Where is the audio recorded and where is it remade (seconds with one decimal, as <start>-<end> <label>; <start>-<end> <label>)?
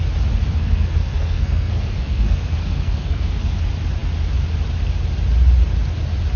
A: 0.0-0.5 recorded; 0.5-3.6 remade; 3.6-6.4 recorded